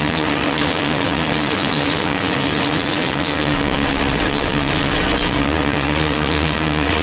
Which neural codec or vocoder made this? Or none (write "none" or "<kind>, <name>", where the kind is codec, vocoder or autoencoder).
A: vocoder, WaveNeXt